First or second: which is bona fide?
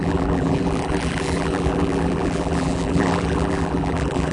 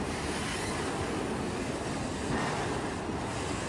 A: second